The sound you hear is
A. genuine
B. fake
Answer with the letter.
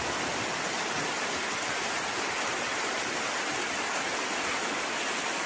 A